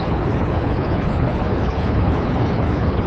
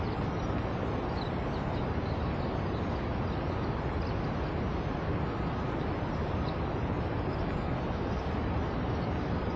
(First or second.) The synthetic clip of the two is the first